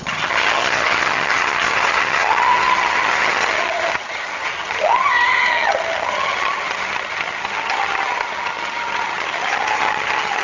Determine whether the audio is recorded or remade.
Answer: remade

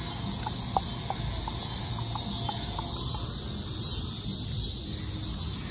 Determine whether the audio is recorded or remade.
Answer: recorded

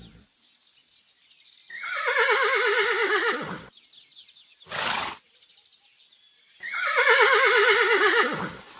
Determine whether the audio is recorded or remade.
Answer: recorded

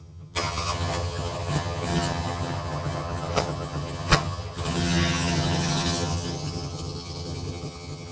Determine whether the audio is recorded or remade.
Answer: remade